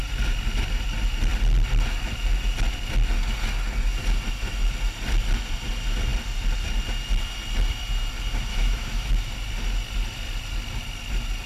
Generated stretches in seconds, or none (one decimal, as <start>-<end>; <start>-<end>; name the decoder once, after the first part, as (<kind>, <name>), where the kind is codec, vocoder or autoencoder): 8.5-9.1 (autoencoder, DAC-VAE)